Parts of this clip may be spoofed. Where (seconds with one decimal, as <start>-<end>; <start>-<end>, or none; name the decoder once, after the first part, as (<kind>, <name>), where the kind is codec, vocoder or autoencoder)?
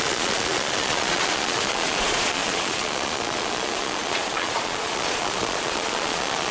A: 0.0-6.5 (vocoder, Vocos)